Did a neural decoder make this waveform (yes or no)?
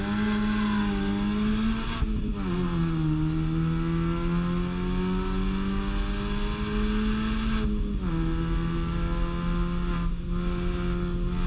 no